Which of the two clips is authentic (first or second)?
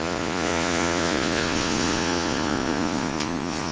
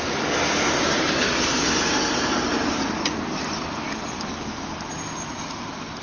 second